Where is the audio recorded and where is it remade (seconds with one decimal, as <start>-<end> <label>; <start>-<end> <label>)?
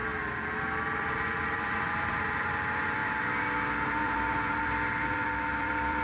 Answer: 0.0-0.6 recorded; 0.6-3.0 remade; 3.0-3.9 recorded; 3.9-6.0 remade